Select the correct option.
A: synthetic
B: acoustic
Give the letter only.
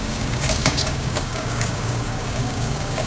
A